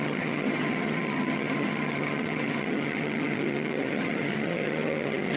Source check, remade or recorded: remade